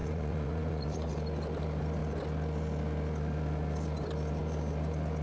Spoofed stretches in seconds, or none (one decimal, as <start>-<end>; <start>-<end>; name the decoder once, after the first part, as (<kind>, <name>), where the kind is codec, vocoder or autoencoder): 0.0-1.1 (vocoder, Vocos)